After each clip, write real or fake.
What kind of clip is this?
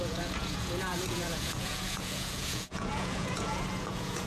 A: fake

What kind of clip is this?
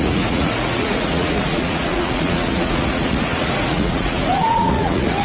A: fake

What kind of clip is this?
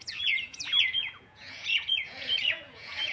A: fake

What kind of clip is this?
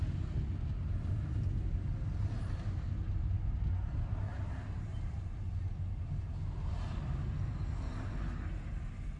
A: real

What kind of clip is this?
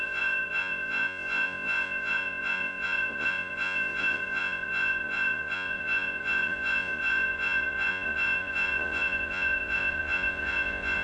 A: fake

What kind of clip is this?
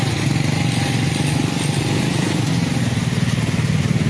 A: real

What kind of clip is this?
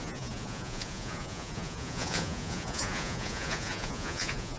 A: fake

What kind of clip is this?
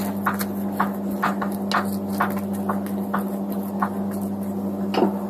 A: real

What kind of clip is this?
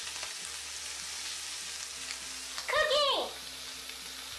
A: real